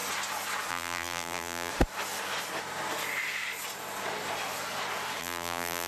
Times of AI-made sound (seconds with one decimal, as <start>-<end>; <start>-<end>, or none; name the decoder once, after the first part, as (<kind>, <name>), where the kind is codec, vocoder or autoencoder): 0.7-1.7 (vocoder, BigVGAN v2); 5.2-5.9